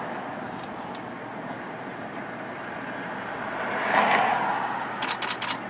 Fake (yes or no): no